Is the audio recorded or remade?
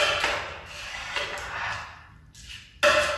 recorded